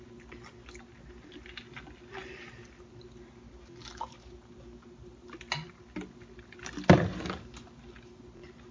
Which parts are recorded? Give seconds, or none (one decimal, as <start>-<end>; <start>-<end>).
0.0-8.7